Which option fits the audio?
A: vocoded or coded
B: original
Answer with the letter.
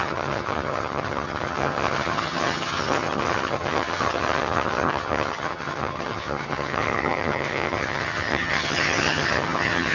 A